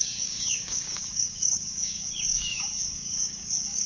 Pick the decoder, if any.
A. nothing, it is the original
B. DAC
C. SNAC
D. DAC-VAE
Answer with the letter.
B